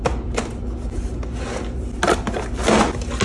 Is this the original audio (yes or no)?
yes